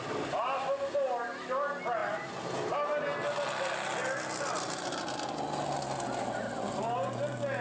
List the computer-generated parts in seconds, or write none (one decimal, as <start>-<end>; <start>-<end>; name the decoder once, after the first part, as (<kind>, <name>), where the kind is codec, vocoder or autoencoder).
none